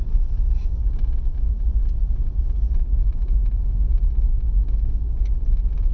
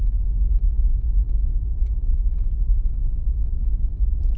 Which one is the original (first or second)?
first